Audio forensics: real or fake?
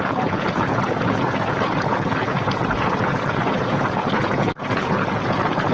fake